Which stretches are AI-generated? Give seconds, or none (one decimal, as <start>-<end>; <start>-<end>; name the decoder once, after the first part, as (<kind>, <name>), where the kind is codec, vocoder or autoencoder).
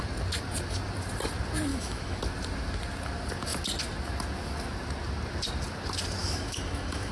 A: 1.7-2.2 (autoencoder, DAC-VAE); 6.2-7.1